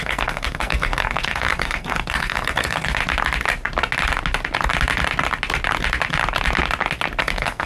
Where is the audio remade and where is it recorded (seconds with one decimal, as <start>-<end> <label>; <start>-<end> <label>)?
0.0-3.0 remade; 3.0-7.2 recorded; 7.2-7.7 remade